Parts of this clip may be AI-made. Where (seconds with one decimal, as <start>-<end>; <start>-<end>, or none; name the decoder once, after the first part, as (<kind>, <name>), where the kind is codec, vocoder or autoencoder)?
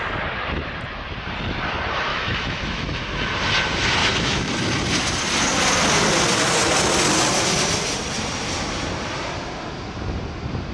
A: 2.1-3.0 (autoencoder, DAC-VAE); 4.0-4.5